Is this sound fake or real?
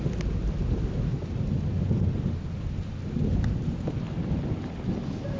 real